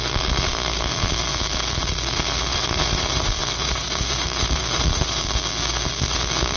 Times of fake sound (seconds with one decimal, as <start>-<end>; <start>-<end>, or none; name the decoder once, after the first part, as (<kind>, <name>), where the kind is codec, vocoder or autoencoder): 2.5-5.2 (vocoder, BigVGAN v2)